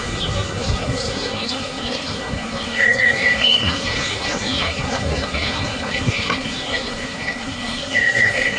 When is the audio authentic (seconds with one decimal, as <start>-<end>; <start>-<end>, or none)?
none